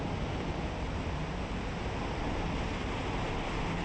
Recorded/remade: recorded